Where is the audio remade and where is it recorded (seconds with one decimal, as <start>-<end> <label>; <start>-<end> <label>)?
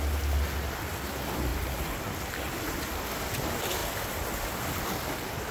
0.0-5.5 recorded